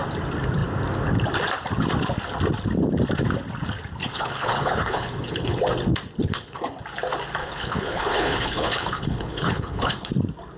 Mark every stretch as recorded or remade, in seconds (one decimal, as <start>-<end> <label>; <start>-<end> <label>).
0.0-4.0 recorded; 4.0-5.6 remade; 5.6-6.2 recorded; 6.2-6.8 remade; 6.8-7.4 recorded; 7.4-10.1 remade; 10.1-10.6 recorded